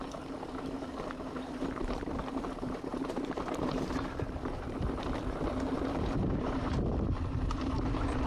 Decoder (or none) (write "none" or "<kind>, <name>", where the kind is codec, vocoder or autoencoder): vocoder, BigVGAN v2